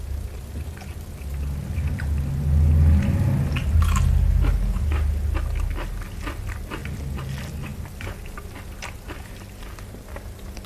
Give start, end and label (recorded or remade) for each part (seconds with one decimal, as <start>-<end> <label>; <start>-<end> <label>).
0.0-7.7 recorded; 7.7-10.7 remade